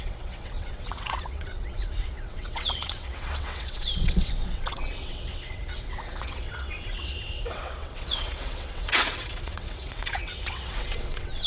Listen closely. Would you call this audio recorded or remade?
remade